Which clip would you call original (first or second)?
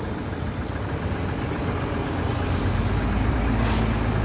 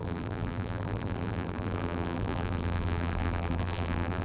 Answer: first